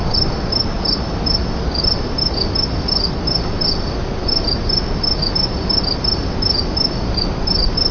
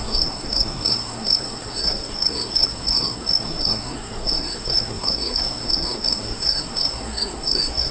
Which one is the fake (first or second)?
second